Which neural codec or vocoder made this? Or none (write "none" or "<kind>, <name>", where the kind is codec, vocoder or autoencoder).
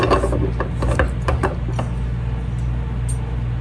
none